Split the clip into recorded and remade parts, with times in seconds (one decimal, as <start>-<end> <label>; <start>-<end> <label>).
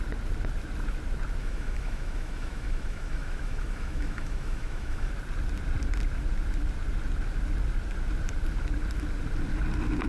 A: 0.0-1.4 recorded; 1.4-5.1 remade; 5.1-10.1 recorded